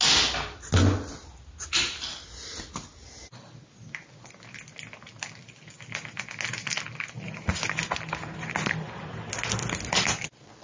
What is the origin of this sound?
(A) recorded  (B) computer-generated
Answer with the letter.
A